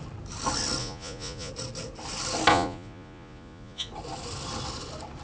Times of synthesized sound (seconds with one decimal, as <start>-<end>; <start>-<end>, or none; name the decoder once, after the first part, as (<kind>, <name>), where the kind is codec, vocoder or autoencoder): 0.8-1.5 (vocoder, Vocos); 2.5-3.9